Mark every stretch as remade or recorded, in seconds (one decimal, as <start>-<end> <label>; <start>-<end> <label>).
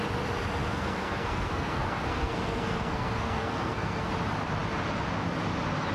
0.0-0.6 recorded; 0.6-4.1 remade; 4.1-5.9 recorded